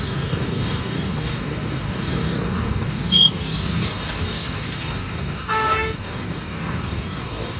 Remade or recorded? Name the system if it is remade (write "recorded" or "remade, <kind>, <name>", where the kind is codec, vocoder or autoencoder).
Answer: remade, codec, DAC